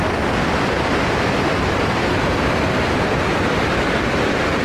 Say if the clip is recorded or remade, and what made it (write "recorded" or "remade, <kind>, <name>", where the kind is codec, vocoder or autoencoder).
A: remade, vocoder, BigVGAN v2